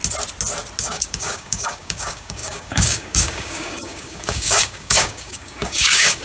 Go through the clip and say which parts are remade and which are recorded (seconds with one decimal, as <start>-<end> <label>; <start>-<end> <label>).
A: 0.0-0.8 recorded; 0.8-6.2 remade